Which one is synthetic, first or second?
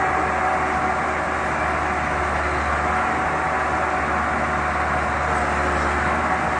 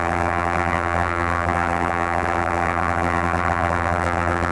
second